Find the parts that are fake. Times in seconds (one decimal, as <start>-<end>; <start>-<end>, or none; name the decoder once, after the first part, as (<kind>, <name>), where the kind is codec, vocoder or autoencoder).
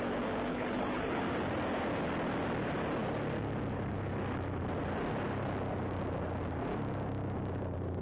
0.5-1.2 (codec, HILCodec)